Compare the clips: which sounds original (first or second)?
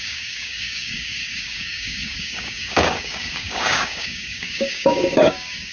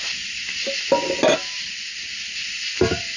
second